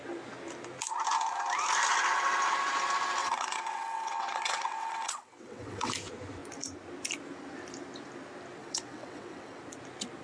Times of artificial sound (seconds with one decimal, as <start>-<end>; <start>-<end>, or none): 3.2-5.9; 8.6-9.6